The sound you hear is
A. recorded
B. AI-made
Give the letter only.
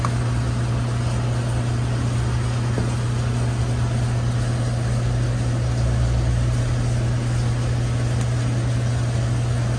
A